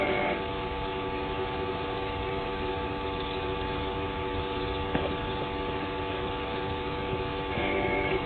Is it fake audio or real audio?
fake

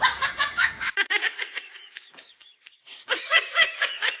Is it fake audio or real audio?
fake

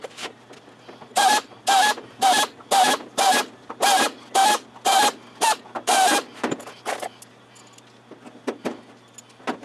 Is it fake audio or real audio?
real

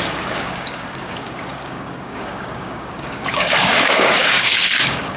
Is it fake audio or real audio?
fake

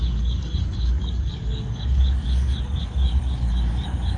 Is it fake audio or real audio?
fake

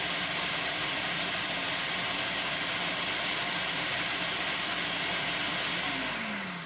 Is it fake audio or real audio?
real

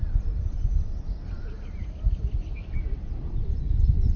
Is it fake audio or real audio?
real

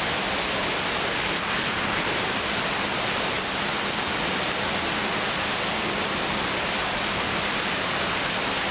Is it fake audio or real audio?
real